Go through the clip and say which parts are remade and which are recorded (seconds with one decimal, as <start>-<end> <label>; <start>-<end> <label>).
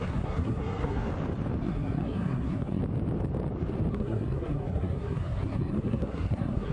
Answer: 0.0-1.1 remade; 1.1-1.6 recorded; 1.6-2.8 remade; 2.8-3.9 recorded; 3.9-6.7 remade